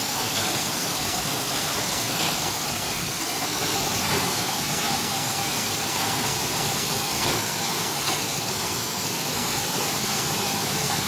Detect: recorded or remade remade